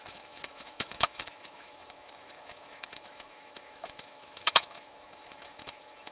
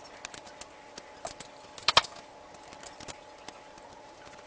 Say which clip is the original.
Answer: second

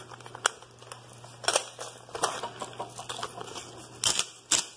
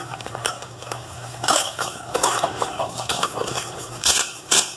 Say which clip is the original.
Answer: first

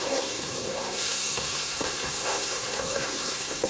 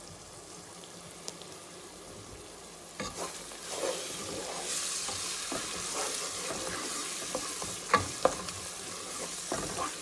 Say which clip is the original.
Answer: second